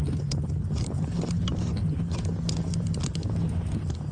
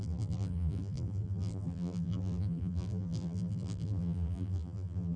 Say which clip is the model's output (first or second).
second